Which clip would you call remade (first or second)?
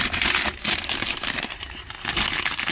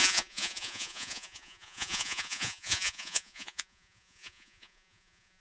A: second